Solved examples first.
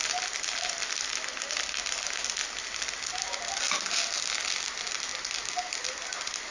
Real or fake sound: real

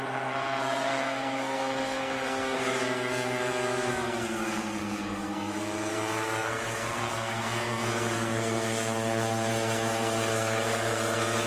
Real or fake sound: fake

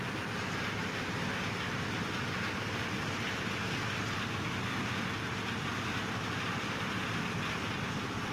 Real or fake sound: real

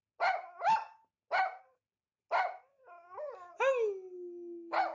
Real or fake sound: real